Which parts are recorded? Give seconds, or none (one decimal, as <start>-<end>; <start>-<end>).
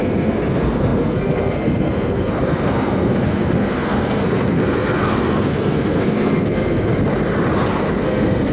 6.9-8.0